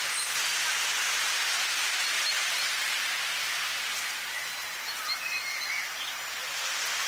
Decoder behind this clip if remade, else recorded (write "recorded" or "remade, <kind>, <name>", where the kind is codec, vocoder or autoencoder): recorded